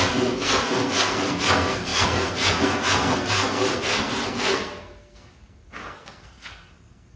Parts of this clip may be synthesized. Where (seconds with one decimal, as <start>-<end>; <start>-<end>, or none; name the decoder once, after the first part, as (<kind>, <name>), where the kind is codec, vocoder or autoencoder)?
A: 0.0-7.2 (codec, SNAC)